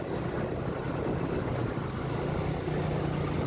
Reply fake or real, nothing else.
real